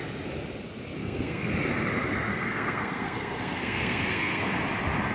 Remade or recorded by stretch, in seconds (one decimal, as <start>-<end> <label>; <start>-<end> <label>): 0.0-1.0 recorded; 1.0-1.5 remade; 1.5-2.3 recorded; 2.3-4.5 remade; 4.5-5.1 recorded